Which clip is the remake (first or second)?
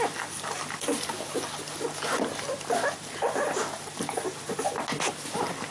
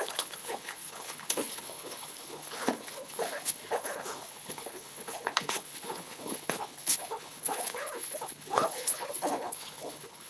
second